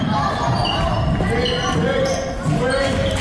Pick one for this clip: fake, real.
real